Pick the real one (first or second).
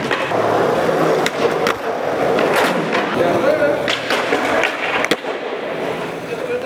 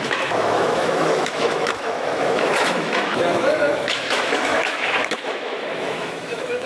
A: first